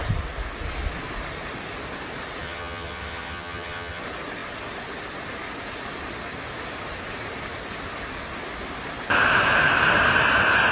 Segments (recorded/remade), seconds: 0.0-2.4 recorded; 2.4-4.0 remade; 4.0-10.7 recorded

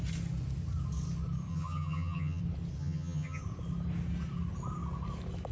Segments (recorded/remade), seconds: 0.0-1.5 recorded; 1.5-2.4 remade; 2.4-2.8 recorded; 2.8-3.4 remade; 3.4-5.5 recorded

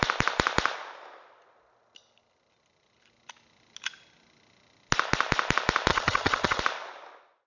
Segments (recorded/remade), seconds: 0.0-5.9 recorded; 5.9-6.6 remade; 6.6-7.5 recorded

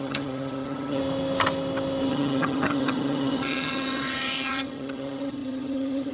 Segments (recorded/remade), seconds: 0.0-1.0 remade; 1.0-2.1 recorded; 2.1-6.1 remade

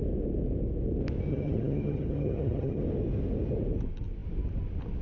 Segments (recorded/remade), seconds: 0.0-1.3 recorded; 1.3-2.8 remade; 2.8-5.0 recorded

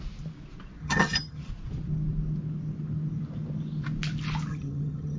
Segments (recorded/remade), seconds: 0.0-0.8 recorded; 0.8-1.5 remade; 1.5-4.5 recorded; 4.5-5.2 remade

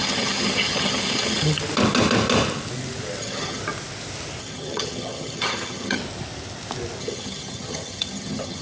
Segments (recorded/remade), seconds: 0.0-1.6 remade; 1.6-3.2 recorded; 3.2-3.6 remade; 3.6-4.4 recorded; 4.4-6.0 remade; 6.0-7.0 recorded; 7.0-8.6 remade

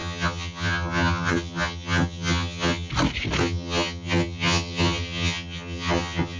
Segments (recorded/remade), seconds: 0.0-2.9 remade; 2.9-3.4 recorded; 3.4-6.4 remade